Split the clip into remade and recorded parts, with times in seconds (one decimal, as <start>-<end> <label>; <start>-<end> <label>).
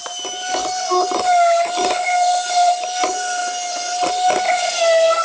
0.0-5.2 recorded